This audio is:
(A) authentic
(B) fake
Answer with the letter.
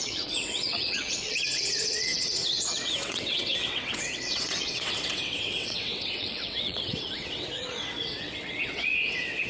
B